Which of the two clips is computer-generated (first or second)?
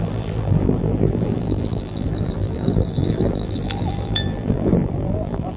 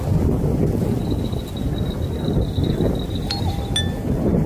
first